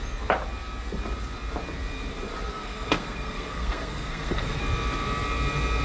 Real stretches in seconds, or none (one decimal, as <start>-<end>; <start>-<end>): 0.0-2.5; 4.6-5.8